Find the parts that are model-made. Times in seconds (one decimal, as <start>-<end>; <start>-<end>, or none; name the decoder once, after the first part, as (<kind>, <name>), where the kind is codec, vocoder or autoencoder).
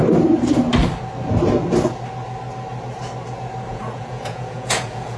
3.7-5.2 (vocoder, Vocos)